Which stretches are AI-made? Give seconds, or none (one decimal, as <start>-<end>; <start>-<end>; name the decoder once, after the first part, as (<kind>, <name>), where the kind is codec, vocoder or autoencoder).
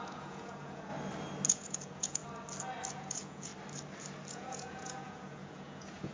0.0-0.9 (vocoder, Vocos); 1.5-2.2; 2.9-3.5; 4.3-6.1